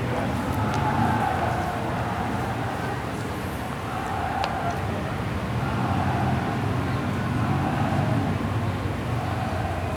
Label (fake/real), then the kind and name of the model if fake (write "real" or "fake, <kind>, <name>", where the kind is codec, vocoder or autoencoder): real